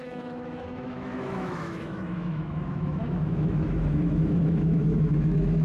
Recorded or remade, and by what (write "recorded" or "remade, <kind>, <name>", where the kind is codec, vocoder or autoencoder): remade, autoencoder, DAC-VAE